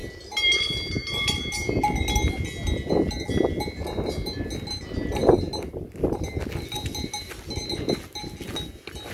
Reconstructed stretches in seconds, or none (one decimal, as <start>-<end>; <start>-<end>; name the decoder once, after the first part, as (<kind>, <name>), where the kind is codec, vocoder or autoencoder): none

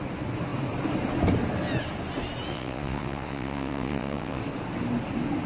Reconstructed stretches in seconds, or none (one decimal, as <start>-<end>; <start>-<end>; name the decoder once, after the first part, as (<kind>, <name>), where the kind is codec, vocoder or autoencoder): 2.5-4.4 (vocoder, WaveNeXt)

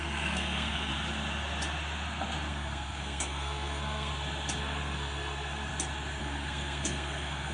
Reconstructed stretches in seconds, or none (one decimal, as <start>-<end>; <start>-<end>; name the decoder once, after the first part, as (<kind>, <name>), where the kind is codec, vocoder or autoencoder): 0.0-0.9 (codec, SNAC); 2.5-4.1; 4.6-5.7; 6.2-7.5

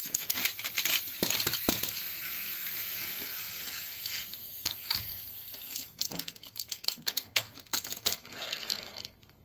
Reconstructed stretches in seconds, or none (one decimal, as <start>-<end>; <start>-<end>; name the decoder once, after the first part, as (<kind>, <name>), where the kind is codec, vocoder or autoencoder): 0.0-0.4 (codec, SNAC); 1.9-9.4

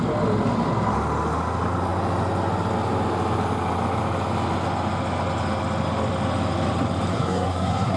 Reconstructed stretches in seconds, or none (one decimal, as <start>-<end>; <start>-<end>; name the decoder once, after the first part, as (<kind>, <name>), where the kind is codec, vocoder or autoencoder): 7.1-8.0 (codec, SNAC)

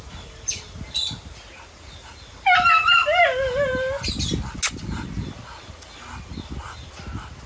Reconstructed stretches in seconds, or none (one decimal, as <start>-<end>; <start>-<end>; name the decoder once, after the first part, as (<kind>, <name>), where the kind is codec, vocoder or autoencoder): 3.0-3.7 (vocoder, BigVGAN v2)

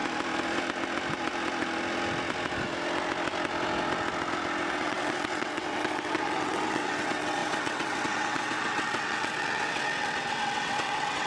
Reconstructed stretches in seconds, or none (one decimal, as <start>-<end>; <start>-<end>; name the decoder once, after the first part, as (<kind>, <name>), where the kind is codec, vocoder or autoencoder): 4.7-11.3 (vocoder, WaveNeXt)